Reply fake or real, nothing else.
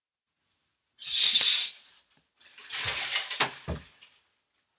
real